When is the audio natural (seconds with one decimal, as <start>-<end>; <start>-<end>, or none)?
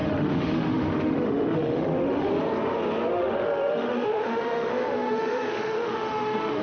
2.3-3.1